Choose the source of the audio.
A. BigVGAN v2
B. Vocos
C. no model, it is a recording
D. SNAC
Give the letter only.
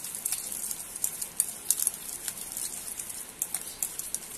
A